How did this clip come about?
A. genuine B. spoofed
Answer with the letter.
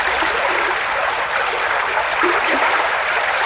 A